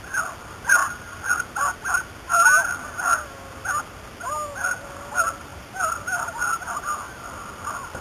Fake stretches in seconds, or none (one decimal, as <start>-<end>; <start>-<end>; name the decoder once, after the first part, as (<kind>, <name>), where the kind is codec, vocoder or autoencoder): 5.5-7.3 (vocoder, BigVGAN v2)